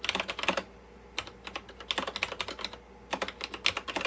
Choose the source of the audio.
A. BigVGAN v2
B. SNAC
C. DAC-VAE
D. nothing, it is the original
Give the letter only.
D